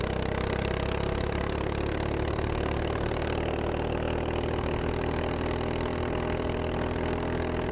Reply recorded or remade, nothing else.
recorded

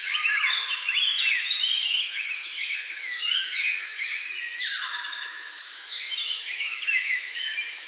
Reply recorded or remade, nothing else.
remade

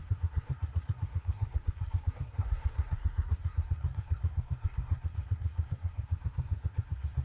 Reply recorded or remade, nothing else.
remade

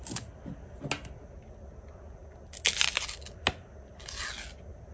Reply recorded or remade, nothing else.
recorded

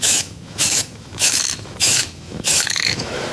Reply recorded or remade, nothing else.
remade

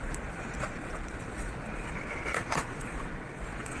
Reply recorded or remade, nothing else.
remade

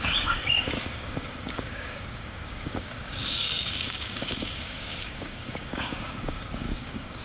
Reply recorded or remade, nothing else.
remade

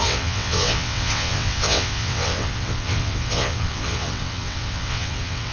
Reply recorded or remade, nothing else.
remade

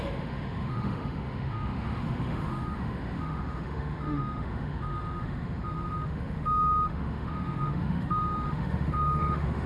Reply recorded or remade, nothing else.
remade